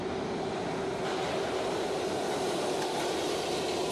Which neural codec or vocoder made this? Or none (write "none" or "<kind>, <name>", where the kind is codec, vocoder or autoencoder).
none